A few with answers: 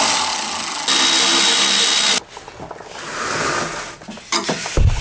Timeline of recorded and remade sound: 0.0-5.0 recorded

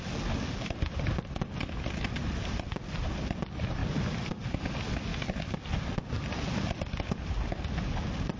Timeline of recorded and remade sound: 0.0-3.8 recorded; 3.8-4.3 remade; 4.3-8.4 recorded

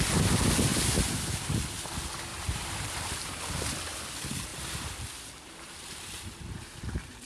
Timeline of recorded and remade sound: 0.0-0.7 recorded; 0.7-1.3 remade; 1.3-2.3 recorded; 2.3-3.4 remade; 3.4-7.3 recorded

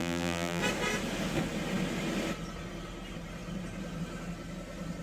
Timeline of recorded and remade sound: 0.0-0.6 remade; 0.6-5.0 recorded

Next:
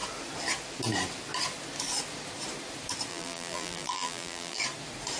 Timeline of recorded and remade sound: 0.0-3.1 recorded; 3.1-4.6 remade; 4.6-5.2 recorded